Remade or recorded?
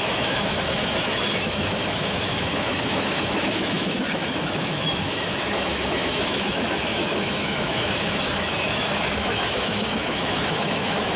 remade